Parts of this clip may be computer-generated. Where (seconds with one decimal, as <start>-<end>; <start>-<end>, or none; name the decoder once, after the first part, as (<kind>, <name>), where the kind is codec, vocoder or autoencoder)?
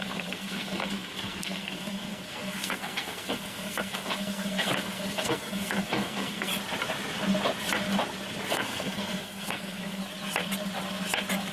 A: 0.0-6.5 (codec, SNAC); 8.5-10.0